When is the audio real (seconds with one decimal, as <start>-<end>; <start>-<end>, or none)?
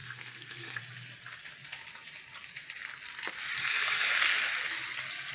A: 0.8-5.3